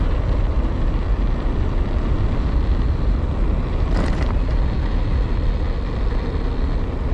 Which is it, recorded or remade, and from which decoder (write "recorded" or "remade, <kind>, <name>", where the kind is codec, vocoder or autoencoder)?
recorded